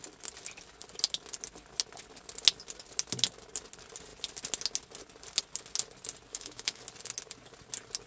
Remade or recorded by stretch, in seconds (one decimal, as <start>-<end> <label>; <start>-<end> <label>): 0.0-6.3 recorded; 6.3-6.8 remade; 6.8-8.1 recorded